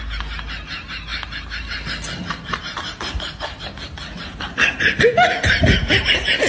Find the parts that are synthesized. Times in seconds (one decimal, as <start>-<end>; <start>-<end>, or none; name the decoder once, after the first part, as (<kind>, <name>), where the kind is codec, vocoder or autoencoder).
none